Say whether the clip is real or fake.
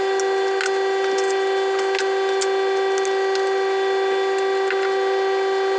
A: real